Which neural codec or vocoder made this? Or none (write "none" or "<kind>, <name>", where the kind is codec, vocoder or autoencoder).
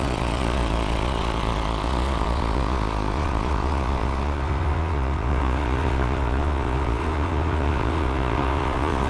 vocoder, Vocos